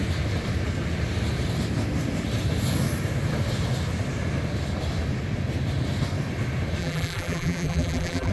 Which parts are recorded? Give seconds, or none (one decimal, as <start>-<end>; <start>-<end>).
0.0-6.8